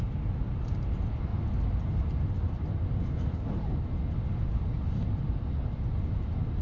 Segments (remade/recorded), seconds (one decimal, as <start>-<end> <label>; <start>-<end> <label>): 0.0-6.6 recorded